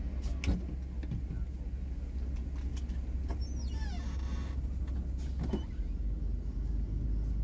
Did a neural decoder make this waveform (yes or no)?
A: no